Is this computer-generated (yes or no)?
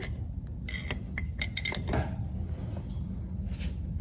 no